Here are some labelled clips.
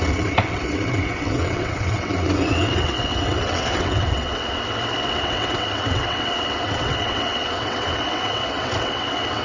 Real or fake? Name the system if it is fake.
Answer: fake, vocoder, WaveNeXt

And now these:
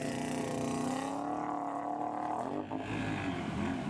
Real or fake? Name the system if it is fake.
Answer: real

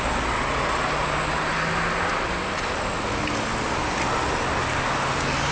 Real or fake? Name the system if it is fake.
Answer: real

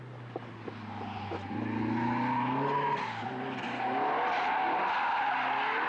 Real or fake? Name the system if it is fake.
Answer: real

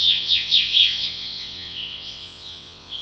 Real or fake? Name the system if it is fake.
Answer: fake, vocoder, WaveNeXt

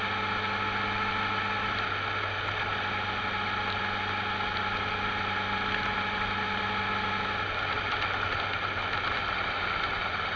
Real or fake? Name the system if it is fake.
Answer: real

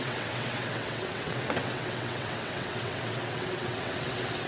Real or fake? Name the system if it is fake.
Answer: fake, vocoder, WaveNeXt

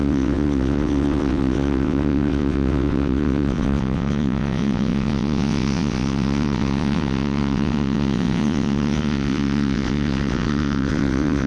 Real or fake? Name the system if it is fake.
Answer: fake, vocoder, WaveNeXt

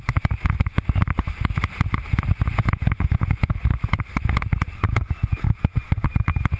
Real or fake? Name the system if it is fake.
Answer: real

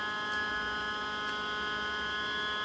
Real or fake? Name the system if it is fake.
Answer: real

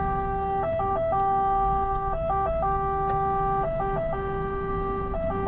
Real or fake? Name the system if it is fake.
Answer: real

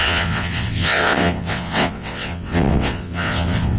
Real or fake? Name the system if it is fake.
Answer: fake, vocoder, WaveNeXt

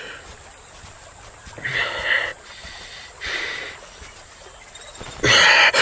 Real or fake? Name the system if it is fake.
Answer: real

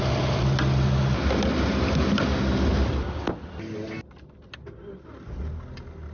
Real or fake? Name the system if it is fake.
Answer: real